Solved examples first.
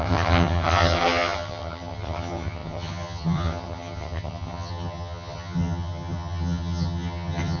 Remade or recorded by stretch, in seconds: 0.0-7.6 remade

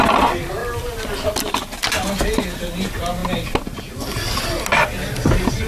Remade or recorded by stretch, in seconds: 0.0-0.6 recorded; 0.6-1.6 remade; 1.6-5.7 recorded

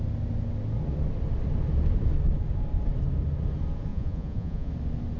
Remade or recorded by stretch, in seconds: 0.0-3.9 recorded; 3.9-4.7 remade; 4.7-5.2 recorded